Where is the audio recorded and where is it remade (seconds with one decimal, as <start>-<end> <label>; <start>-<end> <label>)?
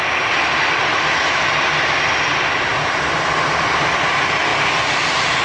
0.0-0.9 recorded; 0.9-1.4 remade; 1.4-5.4 recorded